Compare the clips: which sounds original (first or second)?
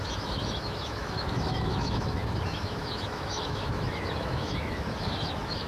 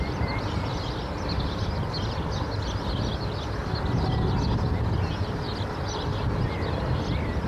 second